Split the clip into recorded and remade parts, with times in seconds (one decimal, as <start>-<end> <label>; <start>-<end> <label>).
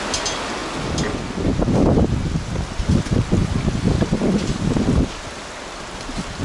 0.0-6.4 recorded